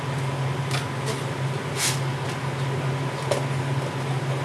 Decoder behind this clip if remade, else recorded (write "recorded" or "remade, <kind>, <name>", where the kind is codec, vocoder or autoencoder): recorded